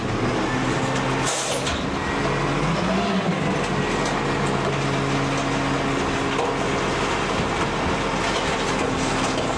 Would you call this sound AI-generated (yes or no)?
no